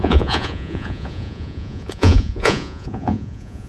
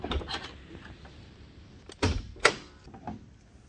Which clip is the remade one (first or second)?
first